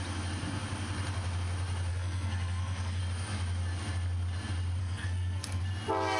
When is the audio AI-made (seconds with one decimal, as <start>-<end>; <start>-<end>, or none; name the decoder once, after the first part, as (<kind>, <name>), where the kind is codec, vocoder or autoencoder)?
1.9-3.0 (codec, SNAC); 4.8-5.6